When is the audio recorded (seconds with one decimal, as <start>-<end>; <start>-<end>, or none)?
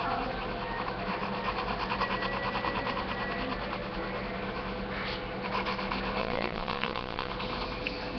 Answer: 0.0-6.2; 7.3-8.2